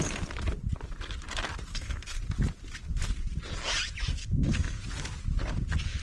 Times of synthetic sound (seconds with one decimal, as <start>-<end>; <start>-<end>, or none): 1.7-2.2; 4.2-4.8